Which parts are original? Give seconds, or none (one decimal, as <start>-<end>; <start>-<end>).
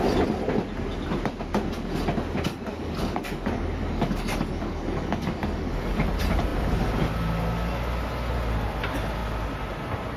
0.0-2.7; 6.0-10.2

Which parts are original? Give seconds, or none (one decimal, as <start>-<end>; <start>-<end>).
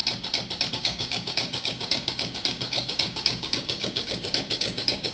0.0-0.7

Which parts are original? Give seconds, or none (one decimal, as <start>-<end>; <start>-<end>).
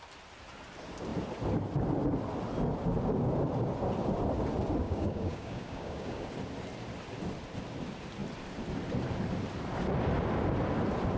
0.0-4.8; 6.3-11.2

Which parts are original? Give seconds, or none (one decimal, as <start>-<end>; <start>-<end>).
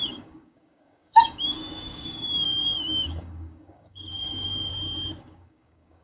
4.7-5.2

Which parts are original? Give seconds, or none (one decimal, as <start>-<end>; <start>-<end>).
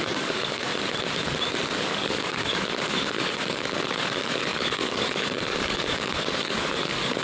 0.7-1.8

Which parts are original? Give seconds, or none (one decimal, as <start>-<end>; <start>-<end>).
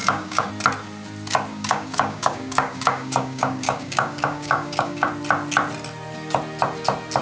0.5-1.5; 5.1-7.2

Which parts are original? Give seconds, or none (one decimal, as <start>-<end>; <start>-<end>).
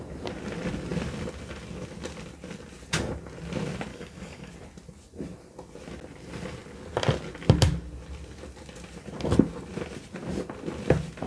0.0-3.9; 4.5-11.3